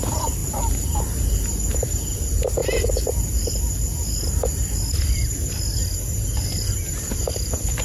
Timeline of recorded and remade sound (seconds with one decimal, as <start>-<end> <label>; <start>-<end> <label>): 0.0-0.4 remade; 0.4-1.0 recorded; 1.0-2.6 remade; 2.6-4.9 recorded; 4.9-7.8 remade